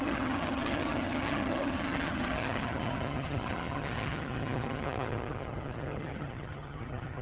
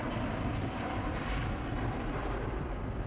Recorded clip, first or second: second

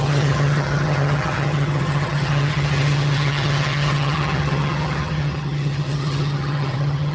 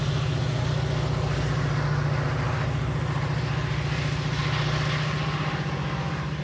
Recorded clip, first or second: second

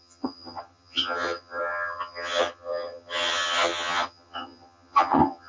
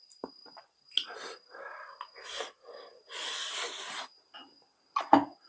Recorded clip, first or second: second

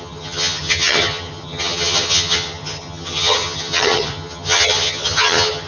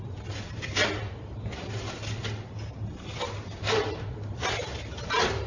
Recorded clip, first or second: second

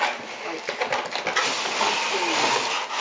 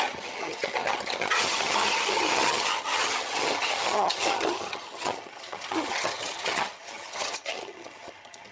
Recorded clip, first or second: first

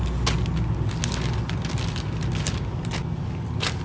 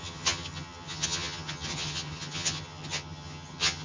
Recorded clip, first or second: first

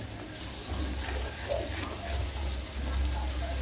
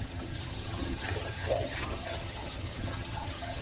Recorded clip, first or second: first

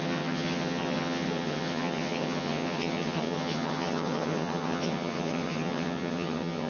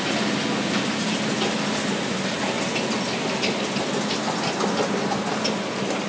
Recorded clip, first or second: second